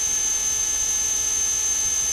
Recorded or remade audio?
recorded